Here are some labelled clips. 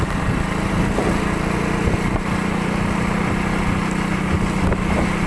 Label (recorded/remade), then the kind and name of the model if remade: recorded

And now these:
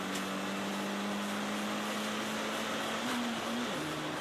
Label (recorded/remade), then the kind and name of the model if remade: recorded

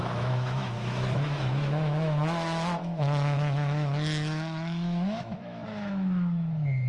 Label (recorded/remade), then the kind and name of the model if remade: remade, autoencoder, DAC-VAE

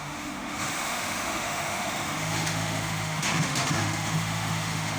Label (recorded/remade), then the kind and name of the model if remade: remade, autoencoder, DAC-VAE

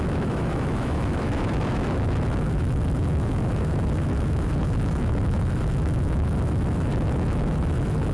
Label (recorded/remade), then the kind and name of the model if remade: remade, autoencoder, DAC-VAE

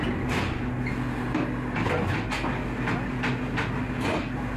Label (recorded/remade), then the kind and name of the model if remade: recorded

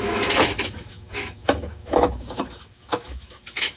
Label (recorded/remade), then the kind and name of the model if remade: remade, autoencoder, DAC-VAE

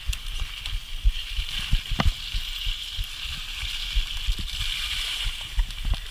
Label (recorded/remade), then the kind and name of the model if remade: recorded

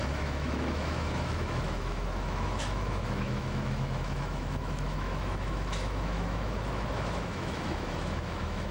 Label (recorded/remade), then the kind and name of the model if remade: remade, autoencoder, DAC-VAE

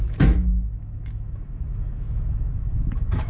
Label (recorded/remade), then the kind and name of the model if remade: remade, autoencoder, DAC-VAE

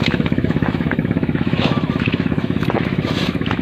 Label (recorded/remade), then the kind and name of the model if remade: remade, autoencoder, DAC-VAE